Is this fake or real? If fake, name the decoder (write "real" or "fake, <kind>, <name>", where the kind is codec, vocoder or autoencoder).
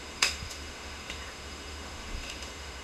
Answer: fake, autoencoder, DAC-VAE